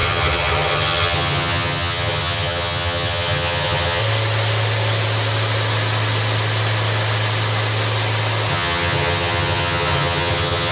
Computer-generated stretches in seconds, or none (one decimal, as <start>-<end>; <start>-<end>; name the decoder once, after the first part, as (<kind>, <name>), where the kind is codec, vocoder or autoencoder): 0.0-4.0 (vocoder, HiFi-GAN); 8.5-10.7